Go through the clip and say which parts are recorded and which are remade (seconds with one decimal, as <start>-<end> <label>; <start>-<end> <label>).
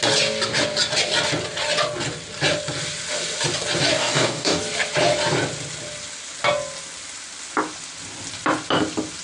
0.0-3.9 recorded; 3.9-4.6 remade; 4.6-9.2 recorded